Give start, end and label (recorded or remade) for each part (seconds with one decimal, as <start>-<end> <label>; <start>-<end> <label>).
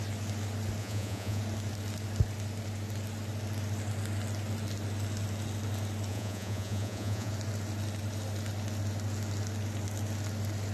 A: 0.0-0.8 recorded; 0.8-1.4 remade; 1.4-6.1 recorded; 6.1-7.3 remade; 7.3-10.7 recorded